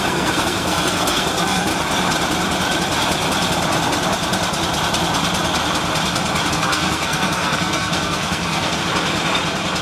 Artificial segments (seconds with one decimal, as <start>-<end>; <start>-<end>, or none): 0.0-1.7; 6.5-8.8